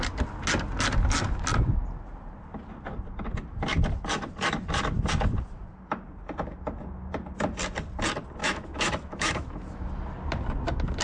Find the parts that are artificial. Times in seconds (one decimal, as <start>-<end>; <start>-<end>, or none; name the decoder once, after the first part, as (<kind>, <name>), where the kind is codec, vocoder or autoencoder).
8.4-9.8 (autoencoder, DAC-VAE)